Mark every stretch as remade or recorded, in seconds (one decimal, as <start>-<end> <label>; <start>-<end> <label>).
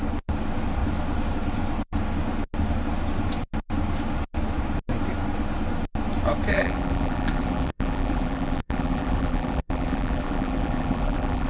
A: 0.0-6.5 recorded; 6.5-11.5 remade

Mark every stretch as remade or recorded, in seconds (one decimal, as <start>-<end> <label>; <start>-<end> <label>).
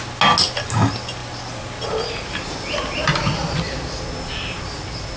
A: 0.0-5.2 recorded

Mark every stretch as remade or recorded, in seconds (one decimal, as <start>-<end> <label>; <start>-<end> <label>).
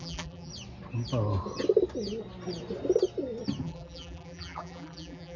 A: 0.0-0.5 remade; 0.5-3.6 recorded; 3.6-5.4 remade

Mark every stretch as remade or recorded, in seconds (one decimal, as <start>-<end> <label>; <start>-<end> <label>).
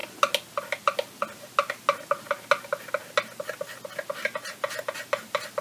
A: 0.0-5.6 recorded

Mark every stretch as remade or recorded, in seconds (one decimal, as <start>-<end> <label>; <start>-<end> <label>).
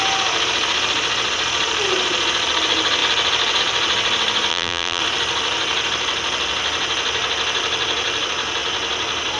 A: 0.0-4.5 recorded; 4.5-5.0 remade; 5.0-9.4 recorded